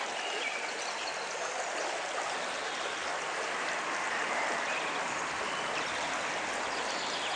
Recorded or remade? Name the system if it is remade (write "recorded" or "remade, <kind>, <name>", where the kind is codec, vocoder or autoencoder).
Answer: recorded